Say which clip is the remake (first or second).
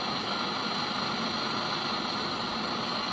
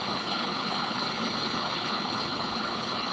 second